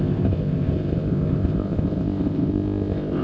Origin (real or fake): fake